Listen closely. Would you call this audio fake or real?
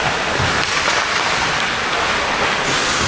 real